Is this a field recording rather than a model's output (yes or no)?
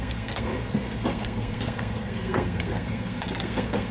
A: no